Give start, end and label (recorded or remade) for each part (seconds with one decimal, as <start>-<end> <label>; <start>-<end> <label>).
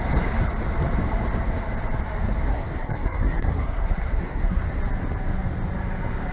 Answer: 0.0-2.5 recorded; 2.5-4.8 remade; 4.8-6.3 recorded